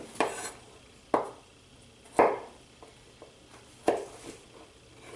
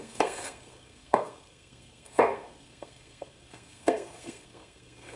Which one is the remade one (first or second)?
second